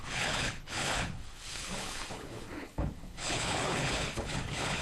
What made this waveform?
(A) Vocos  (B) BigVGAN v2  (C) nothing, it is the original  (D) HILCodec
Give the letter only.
D